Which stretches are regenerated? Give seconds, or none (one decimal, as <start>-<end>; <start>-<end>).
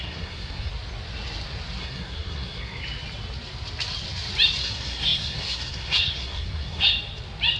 0.0-0.7; 1.8-2.8; 4.6-6.9